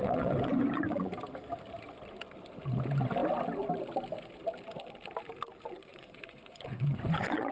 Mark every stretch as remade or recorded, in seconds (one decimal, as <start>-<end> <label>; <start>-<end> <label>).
0.0-1.1 remade; 1.1-5.9 recorded; 5.9-7.5 remade